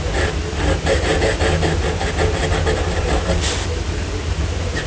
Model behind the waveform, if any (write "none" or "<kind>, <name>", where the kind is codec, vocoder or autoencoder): none